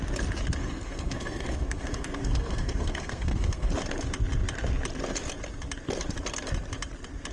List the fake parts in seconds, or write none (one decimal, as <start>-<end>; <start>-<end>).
0.6-3.7